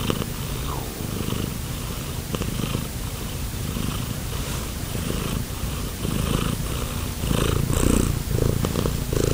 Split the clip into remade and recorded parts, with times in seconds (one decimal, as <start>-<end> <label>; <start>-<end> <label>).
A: 0.0-1.5 recorded; 1.5-6.7 remade; 6.7-9.3 recorded